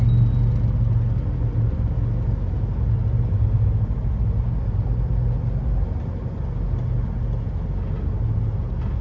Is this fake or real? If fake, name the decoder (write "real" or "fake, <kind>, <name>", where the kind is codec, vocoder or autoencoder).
real